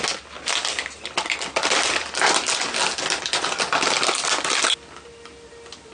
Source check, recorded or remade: recorded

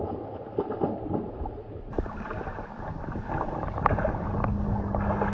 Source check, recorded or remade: recorded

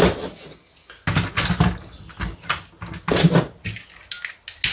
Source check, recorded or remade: recorded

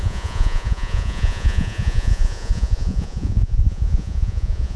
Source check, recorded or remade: remade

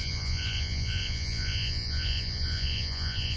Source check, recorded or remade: remade